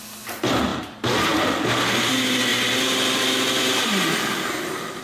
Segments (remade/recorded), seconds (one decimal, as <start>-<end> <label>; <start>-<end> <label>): 0.0-0.7 recorded; 0.7-2.1 remade; 2.1-5.0 recorded